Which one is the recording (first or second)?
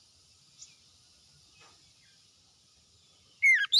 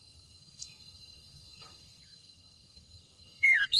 first